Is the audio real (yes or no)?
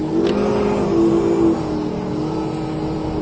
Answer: yes